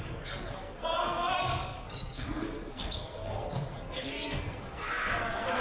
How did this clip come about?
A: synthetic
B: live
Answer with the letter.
A